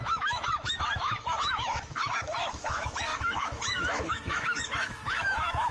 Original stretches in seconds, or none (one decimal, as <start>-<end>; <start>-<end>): none